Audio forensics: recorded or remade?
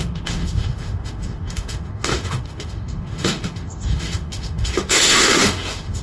remade